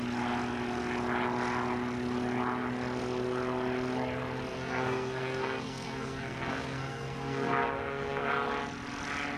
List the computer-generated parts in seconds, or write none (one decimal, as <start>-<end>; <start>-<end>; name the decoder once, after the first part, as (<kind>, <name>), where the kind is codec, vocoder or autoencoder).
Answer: 4.5-8.3 (codec, SNAC)